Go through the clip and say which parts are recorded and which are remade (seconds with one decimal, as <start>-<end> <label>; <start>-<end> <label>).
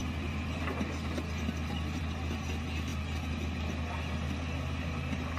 0.0-5.4 recorded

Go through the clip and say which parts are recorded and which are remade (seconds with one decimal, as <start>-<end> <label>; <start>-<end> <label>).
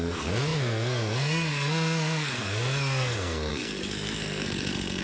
0.0-5.0 remade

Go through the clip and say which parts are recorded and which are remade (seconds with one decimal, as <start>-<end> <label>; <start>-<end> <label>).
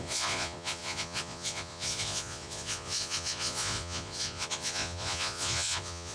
0.0-6.1 remade